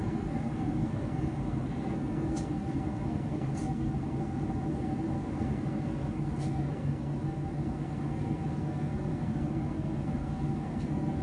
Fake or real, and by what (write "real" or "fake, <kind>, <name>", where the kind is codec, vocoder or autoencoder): fake, codec, SNAC